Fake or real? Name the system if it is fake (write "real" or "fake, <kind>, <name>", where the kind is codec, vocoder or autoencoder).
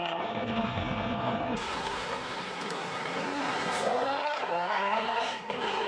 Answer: fake, codec, SNAC